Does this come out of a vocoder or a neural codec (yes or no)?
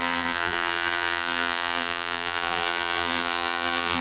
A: yes